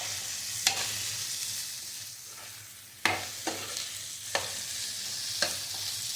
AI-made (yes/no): no